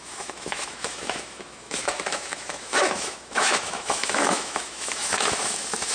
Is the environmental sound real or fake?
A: fake